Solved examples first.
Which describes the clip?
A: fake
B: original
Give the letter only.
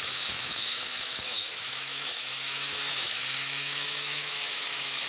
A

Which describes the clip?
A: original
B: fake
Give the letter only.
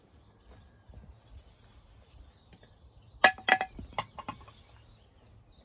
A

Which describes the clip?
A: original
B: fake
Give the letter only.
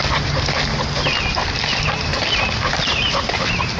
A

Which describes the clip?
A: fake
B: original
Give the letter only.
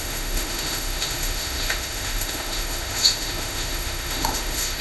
A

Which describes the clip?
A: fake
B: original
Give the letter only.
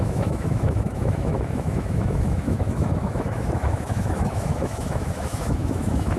A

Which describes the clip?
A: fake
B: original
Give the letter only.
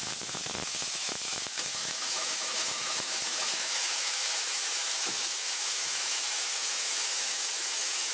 A